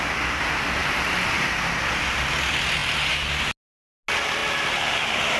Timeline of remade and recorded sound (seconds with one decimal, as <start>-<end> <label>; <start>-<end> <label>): 0.0-5.4 recorded

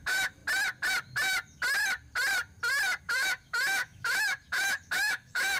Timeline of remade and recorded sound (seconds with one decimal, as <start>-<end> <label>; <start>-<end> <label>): 0.0-0.4 remade; 0.4-3.0 recorded; 3.0-5.6 remade

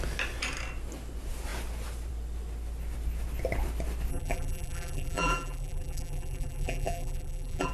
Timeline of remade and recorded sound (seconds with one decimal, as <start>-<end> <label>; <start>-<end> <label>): 0.0-4.1 recorded; 4.1-7.7 remade

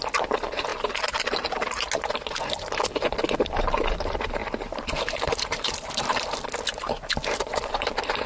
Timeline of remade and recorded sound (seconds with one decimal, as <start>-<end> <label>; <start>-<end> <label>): 0.0-4.4 recorded; 4.4-5.9 remade; 5.9-6.7 recorded; 6.7-7.9 remade; 7.9-8.3 recorded

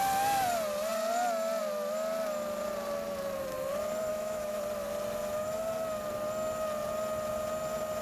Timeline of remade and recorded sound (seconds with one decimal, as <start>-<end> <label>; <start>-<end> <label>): 0.0-4.1 recorded; 4.1-4.6 remade; 4.6-8.0 recorded